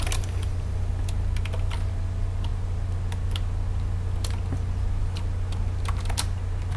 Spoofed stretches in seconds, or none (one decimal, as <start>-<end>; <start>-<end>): none